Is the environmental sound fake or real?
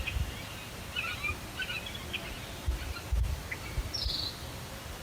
fake